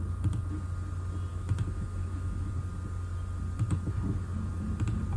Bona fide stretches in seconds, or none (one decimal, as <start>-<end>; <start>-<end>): 0.0-1.3; 2.5-5.2